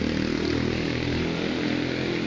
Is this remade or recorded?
recorded